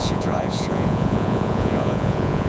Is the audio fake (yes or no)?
yes